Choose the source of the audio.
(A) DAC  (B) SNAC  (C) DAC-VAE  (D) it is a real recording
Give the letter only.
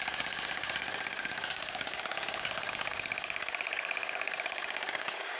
A